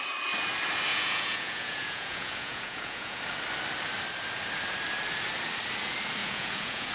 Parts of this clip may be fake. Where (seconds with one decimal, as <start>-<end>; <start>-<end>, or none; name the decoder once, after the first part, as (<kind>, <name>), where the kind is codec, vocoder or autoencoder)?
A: 0.9-3.2 (vocoder, Vocos); 6.2-6.9